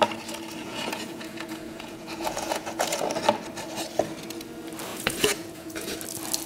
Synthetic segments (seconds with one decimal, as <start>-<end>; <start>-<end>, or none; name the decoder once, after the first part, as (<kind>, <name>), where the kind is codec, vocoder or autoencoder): 0.6-3.1 (vocoder, Vocos); 4.9-6.0